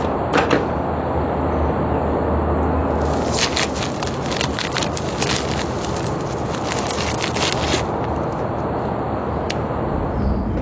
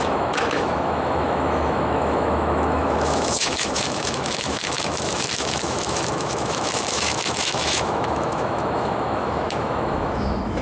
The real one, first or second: first